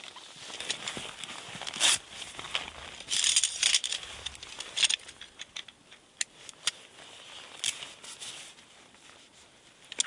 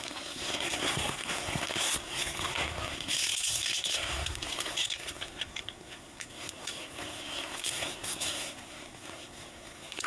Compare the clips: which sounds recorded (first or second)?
first